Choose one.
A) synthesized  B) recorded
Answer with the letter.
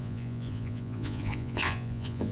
A